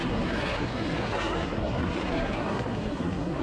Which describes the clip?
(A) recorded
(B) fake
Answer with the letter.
B